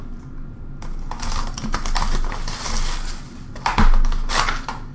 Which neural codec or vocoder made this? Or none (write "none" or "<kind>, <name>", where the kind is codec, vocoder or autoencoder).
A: none